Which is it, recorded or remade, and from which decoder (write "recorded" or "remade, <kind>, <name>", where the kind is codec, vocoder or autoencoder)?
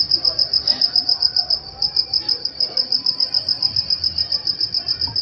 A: recorded